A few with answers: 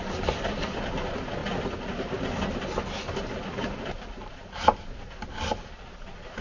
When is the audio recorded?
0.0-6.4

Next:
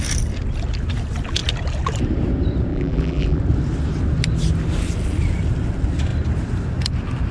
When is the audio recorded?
0.0-2.7; 3.4-7.3